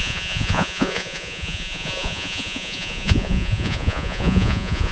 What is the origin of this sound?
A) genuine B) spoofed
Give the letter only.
B